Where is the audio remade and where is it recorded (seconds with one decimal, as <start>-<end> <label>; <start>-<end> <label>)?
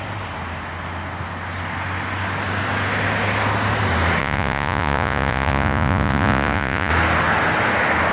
0.0-4.2 recorded; 4.2-6.9 remade; 6.9-8.1 recorded